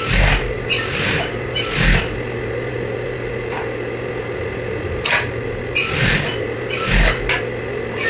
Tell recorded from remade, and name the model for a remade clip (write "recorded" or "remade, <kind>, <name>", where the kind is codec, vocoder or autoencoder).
recorded